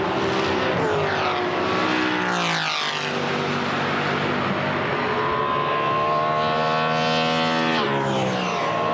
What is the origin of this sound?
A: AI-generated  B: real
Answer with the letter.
B